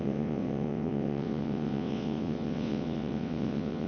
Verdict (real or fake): fake